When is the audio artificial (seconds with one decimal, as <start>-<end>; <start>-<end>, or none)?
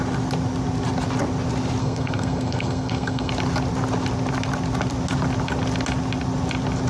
1.8-3.3